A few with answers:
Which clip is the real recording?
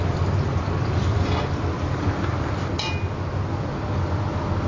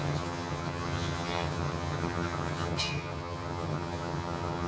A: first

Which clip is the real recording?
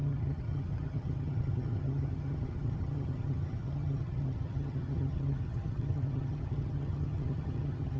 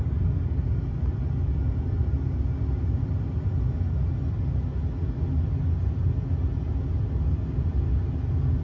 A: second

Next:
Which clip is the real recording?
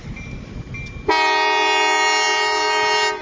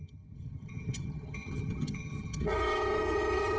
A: first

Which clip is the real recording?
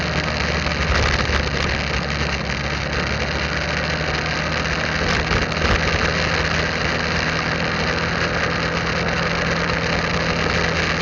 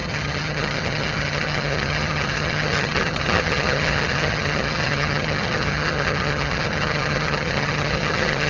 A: first